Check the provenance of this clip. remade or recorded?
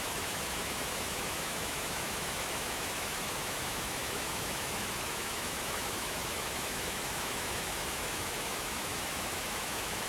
remade